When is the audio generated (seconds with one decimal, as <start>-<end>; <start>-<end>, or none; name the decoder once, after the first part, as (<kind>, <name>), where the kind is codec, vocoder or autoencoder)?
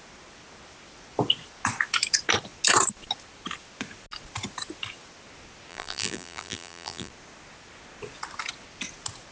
5.7-7.1 (vocoder, BigVGAN v2)